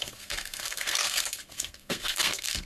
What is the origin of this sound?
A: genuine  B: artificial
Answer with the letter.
B